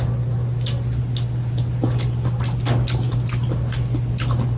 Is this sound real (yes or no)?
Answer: yes